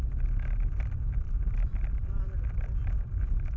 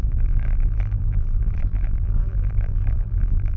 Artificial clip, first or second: second